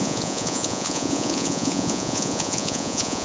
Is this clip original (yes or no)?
no